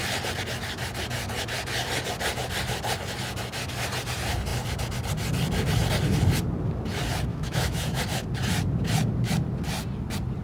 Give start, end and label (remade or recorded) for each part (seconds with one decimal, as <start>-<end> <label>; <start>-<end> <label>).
0.0-7.3 recorded; 7.3-8.0 remade; 8.0-10.4 recorded